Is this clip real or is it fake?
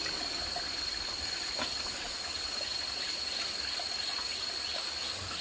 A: real